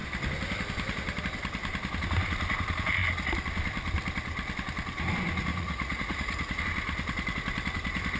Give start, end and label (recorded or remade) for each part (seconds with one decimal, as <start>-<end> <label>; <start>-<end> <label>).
0.0-5.5 recorded; 5.5-6.6 remade; 6.6-8.2 recorded